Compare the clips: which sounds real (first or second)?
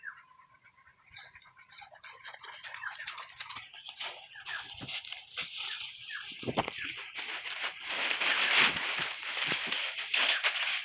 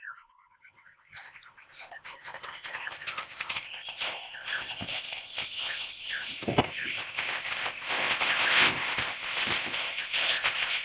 first